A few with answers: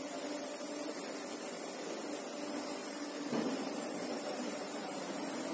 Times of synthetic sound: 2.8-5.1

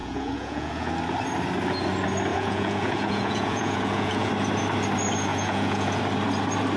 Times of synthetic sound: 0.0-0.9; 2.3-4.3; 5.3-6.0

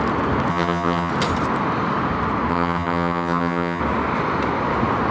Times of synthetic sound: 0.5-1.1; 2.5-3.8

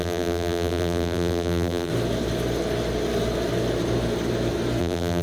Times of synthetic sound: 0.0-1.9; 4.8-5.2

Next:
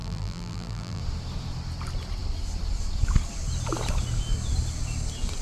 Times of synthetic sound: 0.0-1.0